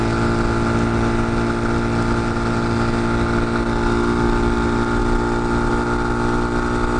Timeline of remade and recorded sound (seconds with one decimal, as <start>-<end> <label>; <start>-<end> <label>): 0.0-7.0 recorded